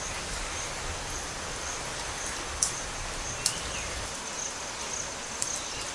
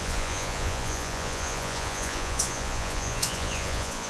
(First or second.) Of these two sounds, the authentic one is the first